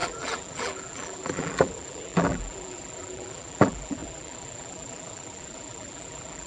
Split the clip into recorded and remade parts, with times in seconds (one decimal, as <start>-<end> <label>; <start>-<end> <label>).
0.0-6.5 remade